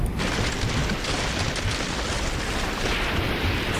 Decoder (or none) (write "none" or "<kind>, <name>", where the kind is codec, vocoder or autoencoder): none